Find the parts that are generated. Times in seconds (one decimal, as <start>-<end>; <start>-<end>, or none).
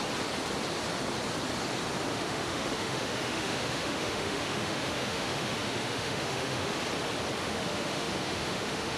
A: 2.1-6.8; 7.4-9.0